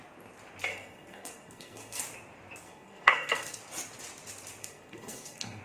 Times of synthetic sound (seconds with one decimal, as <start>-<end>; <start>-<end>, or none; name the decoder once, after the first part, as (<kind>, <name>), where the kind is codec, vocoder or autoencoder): 0.7-2.0 (codec, SNAC); 2.6-3.6; 4.6-5.6